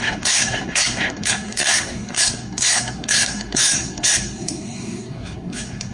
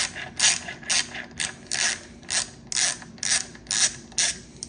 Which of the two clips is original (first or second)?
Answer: second